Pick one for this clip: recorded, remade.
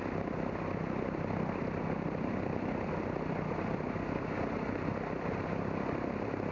recorded